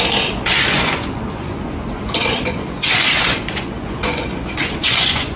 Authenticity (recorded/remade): remade